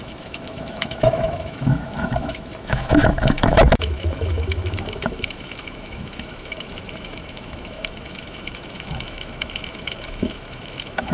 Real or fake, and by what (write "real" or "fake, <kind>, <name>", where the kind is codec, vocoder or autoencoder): fake, autoencoder, DAC-VAE